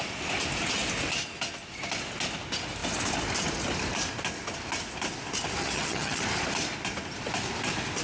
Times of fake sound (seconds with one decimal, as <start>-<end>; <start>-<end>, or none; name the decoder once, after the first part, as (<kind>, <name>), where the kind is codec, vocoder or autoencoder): 5.6-6.2 (vocoder, HiFi-GAN)

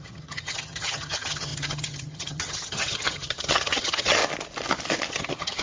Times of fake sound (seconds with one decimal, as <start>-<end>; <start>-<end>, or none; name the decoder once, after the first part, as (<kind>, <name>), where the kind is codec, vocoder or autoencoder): 0.0-4.2 (vocoder, HiFi-GAN); 5.1-5.6

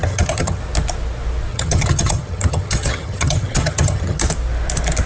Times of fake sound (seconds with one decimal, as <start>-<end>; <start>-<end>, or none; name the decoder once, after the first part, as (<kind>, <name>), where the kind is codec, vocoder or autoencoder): 0.0-0.6 (vocoder, HiFi-GAN); 1.5-4.2

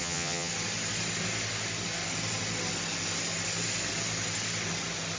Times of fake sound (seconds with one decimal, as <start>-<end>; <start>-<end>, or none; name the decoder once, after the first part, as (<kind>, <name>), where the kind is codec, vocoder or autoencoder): 0.0-0.5 (vocoder, HiFi-GAN)

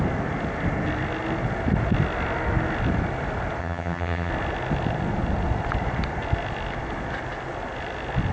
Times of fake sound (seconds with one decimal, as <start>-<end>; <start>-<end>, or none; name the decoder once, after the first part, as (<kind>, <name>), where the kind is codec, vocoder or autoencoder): 3.6-4.3 (vocoder, HiFi-GAN)

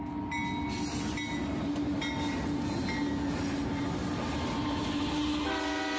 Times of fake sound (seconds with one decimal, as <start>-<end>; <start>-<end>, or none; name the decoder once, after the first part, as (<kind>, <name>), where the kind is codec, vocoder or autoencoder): none